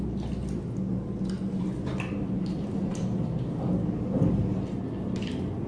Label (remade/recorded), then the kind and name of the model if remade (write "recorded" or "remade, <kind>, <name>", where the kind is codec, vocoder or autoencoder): recorded